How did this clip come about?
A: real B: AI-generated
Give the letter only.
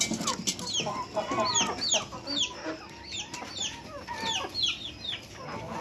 A